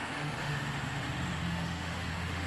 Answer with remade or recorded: remade